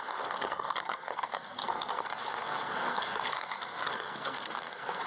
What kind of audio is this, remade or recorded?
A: remade